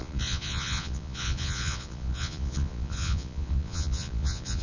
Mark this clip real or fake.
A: fake